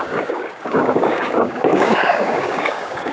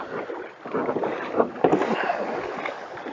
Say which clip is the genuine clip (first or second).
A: second